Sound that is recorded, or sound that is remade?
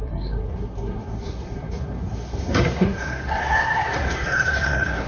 remade